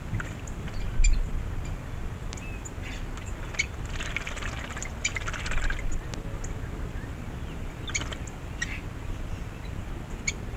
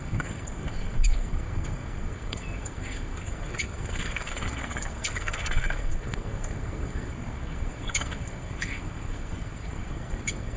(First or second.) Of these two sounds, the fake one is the second